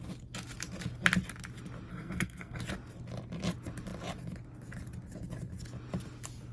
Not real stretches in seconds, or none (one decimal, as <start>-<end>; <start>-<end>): 1.9-2.6